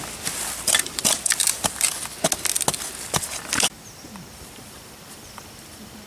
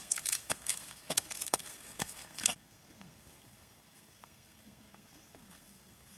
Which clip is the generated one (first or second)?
second